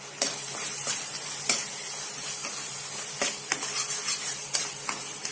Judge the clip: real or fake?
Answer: real